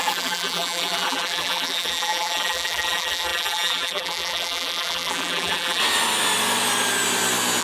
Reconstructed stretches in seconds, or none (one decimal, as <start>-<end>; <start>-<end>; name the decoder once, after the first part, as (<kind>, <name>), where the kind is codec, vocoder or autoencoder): 0.0-5.8 (vocoder, BigVGAN v2)